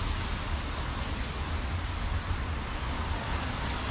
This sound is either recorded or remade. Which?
recorded